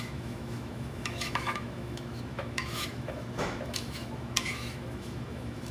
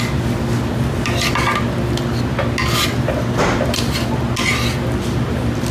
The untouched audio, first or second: second